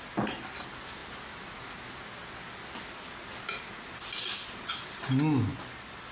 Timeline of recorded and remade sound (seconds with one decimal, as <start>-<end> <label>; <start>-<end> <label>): 0.0-6.1 recorded